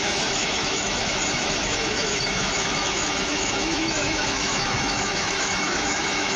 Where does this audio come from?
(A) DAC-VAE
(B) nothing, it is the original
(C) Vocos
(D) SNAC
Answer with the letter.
A